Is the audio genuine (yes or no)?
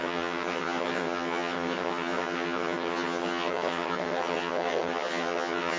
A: no